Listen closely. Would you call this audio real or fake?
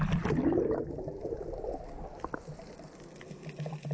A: real